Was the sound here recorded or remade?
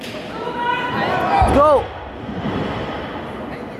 recorded